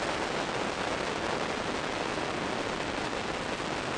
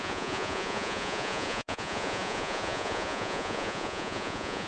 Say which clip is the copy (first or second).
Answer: second